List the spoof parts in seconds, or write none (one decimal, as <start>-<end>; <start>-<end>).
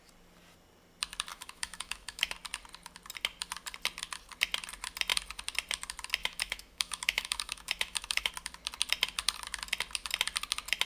1.3-2.3; 6.2-8.3